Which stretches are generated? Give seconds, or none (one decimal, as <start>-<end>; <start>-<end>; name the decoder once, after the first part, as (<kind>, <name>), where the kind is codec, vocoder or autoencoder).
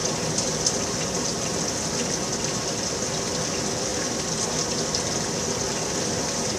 none